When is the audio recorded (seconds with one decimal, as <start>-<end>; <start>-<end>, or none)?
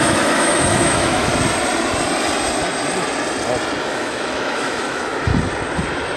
1.3-3.8; 5.3-6.2